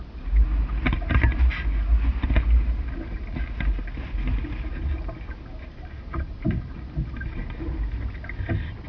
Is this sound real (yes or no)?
yes